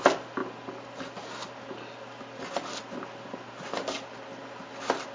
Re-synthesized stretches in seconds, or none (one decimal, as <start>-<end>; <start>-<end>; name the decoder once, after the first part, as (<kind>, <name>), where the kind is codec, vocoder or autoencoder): none